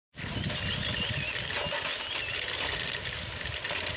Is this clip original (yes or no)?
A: yes